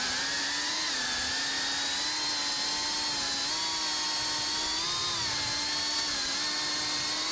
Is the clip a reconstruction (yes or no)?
no